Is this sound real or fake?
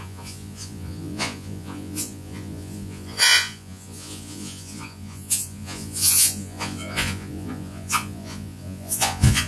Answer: fake